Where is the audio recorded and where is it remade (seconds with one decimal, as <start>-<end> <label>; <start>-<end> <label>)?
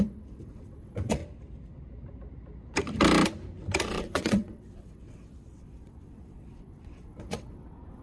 0.0-1.2 remade; 1.2-3.9 recorded; 3.9-8.0 remade